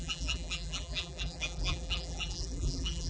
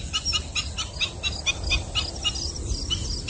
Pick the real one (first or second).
second